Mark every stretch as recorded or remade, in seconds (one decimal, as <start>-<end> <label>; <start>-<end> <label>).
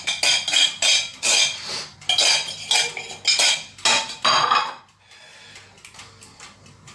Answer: 0.0-6.9 recorded